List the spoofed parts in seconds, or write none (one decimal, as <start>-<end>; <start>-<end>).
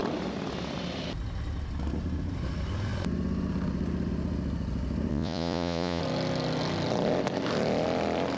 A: 5.1-6.0